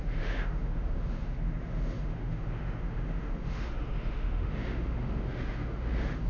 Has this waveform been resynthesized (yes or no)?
yes